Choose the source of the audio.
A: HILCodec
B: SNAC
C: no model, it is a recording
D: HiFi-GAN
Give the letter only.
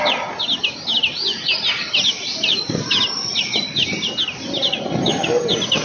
C